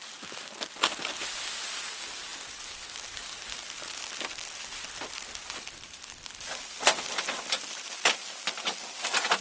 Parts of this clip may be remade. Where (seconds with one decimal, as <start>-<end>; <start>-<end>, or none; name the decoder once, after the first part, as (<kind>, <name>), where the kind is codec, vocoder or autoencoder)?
none